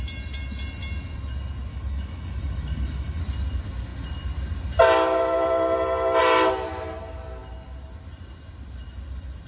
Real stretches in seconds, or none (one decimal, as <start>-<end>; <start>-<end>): 0.0-1.7; 3.2-9.5